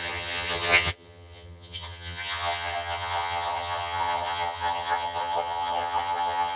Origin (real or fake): fake